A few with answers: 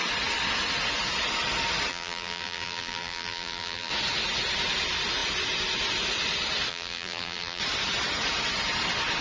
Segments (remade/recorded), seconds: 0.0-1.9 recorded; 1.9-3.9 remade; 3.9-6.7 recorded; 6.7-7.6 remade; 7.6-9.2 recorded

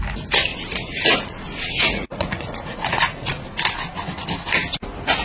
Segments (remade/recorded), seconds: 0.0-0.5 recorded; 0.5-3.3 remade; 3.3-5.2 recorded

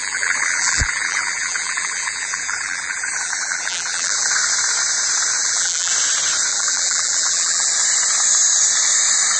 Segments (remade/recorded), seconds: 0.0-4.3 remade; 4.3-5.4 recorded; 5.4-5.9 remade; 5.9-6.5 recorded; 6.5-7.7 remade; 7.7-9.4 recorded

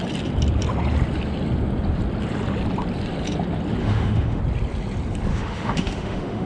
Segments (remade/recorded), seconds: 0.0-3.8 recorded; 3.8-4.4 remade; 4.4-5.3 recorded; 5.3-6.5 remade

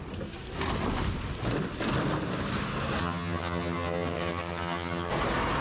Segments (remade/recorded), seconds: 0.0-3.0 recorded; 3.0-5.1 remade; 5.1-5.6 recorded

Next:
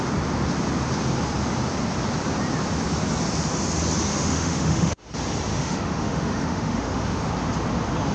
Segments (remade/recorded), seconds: 0.0-4.1 recorded; 4.1-5.1 remade; 5.1-5.5 recorded; 5.5-7.3 remade; 7.3-8.1 recorded